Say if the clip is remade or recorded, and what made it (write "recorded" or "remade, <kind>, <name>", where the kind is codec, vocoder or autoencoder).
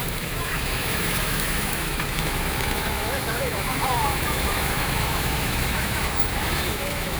remade, autoencoder, DAC-VAE